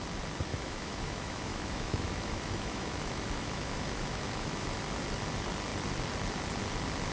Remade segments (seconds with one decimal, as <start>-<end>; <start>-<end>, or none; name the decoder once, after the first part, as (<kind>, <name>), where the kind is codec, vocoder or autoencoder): 0.5-4.8 (autoencoder, DAC-VAE)